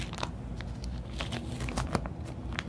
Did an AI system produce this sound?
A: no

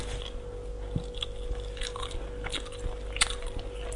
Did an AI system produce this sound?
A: no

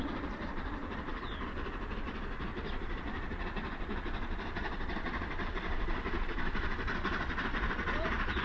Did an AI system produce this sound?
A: yes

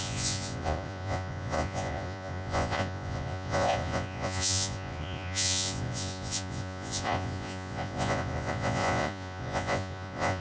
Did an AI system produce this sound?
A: yes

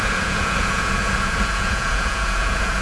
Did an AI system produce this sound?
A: yes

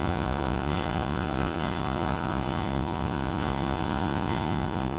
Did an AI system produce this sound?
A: yes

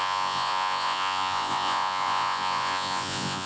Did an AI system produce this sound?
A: yes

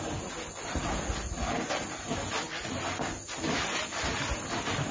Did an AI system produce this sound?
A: no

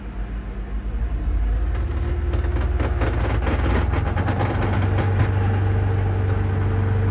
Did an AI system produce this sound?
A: no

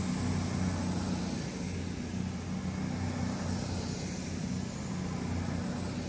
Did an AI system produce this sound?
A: no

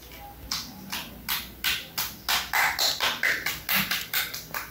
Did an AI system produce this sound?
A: no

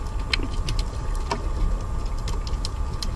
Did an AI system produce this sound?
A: no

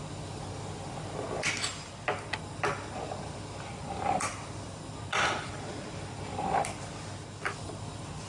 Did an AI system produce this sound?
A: no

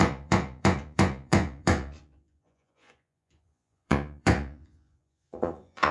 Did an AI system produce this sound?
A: yes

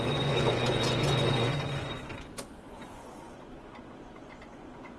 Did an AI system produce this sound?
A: yes